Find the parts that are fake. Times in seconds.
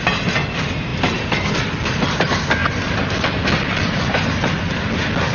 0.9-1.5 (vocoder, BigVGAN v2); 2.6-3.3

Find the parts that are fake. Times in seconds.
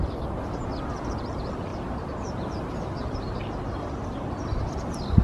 none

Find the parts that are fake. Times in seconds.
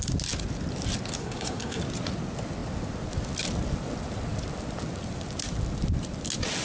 1.2-1.8 (codec, SNAC)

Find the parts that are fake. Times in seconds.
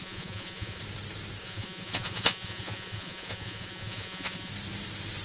0.0-0.8 (vocoder, Vocos); 1.4-4.5